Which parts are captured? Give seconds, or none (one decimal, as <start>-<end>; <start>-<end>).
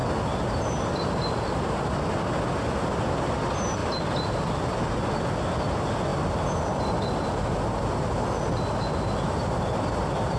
0.0-10.4